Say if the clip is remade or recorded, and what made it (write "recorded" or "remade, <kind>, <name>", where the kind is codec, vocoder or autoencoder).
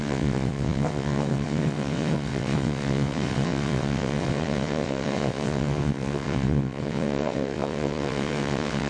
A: remade, vocoder, WaveNeXt